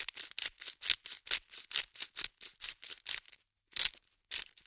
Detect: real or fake real